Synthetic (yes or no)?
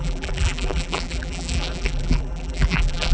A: yes